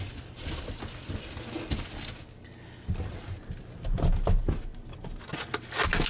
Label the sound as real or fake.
real